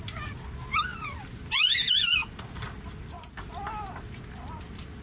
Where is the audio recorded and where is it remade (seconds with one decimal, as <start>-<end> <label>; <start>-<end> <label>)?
0.0-5.0 recorded